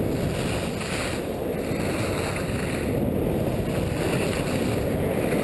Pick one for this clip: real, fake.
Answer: real